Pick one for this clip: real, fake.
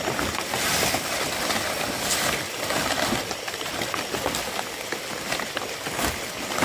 real